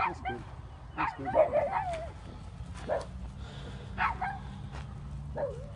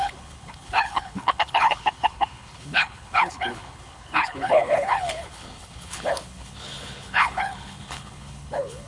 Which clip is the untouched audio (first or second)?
first